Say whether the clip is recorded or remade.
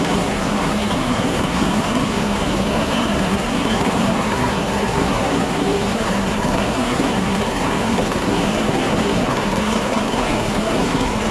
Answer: remade